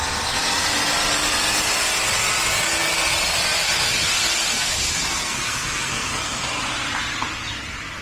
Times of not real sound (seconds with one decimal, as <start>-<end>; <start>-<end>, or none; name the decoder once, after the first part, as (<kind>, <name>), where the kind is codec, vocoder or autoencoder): 4.5-6.6 (codec, SNAC)